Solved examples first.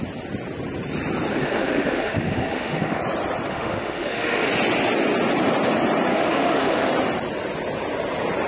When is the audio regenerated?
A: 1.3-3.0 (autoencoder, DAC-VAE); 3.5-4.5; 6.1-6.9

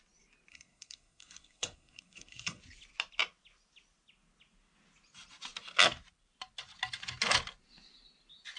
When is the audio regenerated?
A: 0.5-2.6 (codec, SNAC)

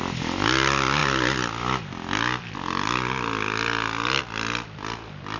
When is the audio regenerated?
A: none

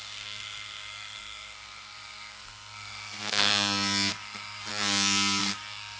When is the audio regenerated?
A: 0.0-3.5 (codec, SNAC); 4.1-4.7; 5.4-6.0